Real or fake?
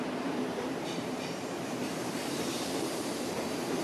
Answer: fake